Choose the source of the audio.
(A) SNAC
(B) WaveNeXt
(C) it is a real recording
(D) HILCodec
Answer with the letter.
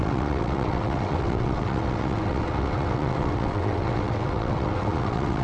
B